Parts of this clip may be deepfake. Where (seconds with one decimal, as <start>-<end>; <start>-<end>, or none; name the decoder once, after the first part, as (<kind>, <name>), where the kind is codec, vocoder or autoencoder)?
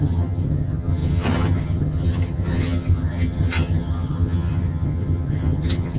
0.0-6.0 (vocoder, HiFi-GAN)